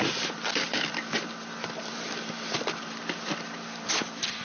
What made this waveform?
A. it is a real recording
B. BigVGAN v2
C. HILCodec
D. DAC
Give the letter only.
B